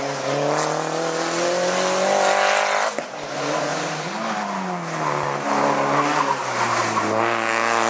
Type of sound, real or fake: real